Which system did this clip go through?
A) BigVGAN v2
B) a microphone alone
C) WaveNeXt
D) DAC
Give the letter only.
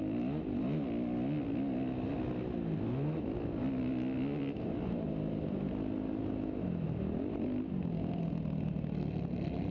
B